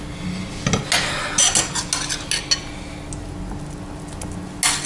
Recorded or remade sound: recorded